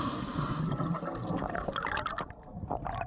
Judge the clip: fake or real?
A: real